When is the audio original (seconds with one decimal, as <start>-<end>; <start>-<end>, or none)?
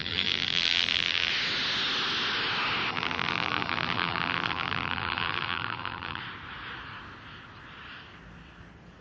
1.3-2.9; 6.2-9.0